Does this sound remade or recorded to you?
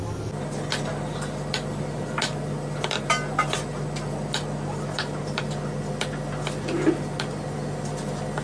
recorded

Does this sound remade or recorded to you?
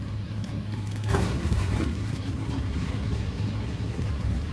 remade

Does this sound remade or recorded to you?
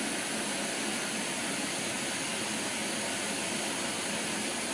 recorded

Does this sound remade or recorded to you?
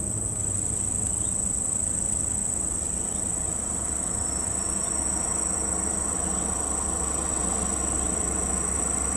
recorded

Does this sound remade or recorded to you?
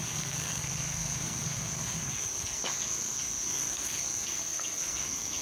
remade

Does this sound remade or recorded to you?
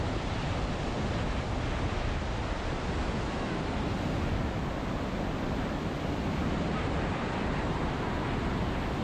recorded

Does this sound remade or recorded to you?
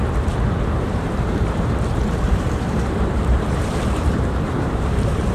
remade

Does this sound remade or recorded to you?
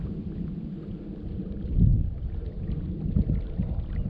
recorded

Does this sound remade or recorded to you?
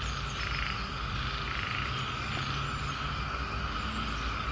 recorded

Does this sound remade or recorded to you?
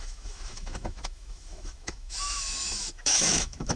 remade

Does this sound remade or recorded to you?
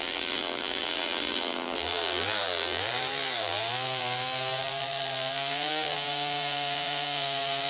remade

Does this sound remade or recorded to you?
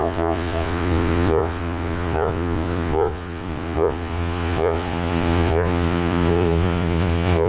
remade